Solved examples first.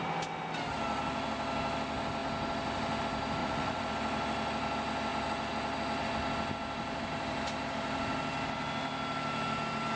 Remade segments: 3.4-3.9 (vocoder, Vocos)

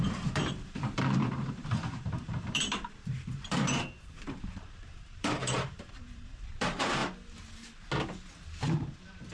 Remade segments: 0.0-7.0 (vocoder, BigVGAN v2); 8.7-9.3

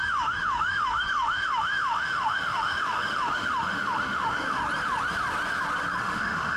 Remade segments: 0.0-4.6 (autoencoder, DAC-VAE); 6.0-6.6

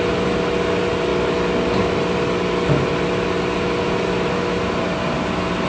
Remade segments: none

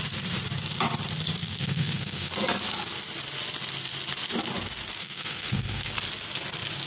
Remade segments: 1.4-2.3 (codec, SNAC); 5.0-5.9

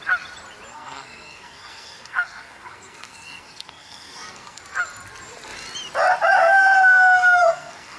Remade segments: 0.7-4.6 (codec, SNAC); 6.4-8.0

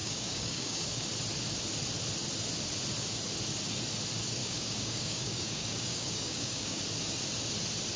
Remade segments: 0.0-1.1 (codec, DAC); 4.4-6.8